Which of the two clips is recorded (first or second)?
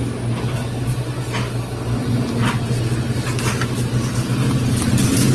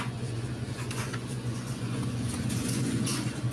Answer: first